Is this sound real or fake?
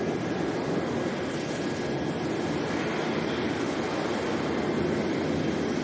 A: real